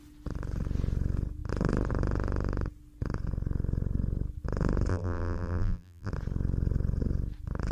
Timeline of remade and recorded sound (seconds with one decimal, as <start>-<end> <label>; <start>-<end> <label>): 0.0-4.9 recorded; 4.9-6.1 remade; 6.1-7.7 recorded